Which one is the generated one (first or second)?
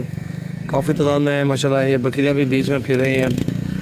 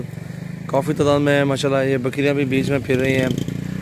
first